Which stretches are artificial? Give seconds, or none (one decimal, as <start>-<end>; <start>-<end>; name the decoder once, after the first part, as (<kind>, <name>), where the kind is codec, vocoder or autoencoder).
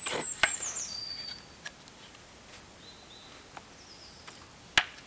none